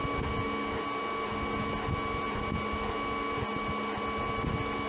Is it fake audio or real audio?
real